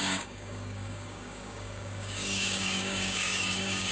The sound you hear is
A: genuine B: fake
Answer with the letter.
B